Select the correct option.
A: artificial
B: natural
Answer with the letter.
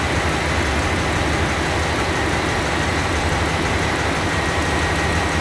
B